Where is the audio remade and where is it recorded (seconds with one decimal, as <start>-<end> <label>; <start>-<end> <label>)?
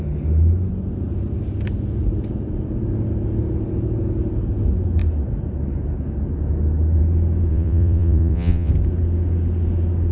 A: 0.0-7.5 recorded; 7.5-8.7 remade; 8.7-10.1 recorded